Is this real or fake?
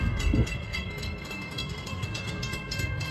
fake